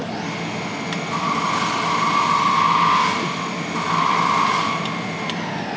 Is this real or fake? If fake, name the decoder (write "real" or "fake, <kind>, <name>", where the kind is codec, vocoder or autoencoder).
real